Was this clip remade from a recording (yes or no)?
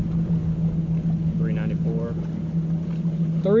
no